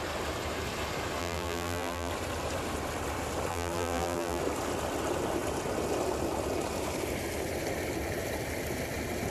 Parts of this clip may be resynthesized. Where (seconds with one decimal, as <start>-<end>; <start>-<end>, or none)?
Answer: 1.2-2.1; 3.5-4.4